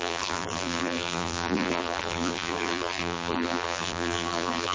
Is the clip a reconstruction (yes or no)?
yes